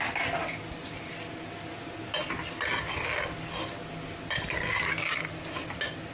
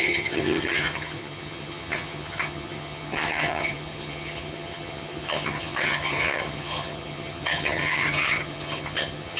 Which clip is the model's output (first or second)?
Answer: second